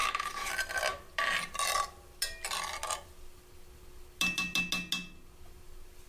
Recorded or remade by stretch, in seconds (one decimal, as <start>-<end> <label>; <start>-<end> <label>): 0.0-0.5 remade; 0.5-6.1 recorded